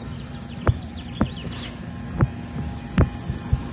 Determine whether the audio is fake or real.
real